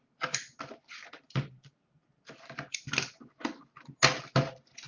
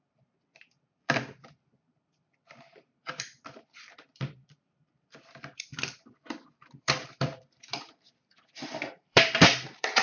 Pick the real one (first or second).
first